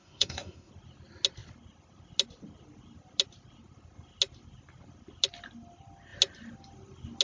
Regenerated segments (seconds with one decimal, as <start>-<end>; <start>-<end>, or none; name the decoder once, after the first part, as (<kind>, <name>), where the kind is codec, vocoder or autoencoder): 0.0-0.7 (autoencoder, DAC-VAE)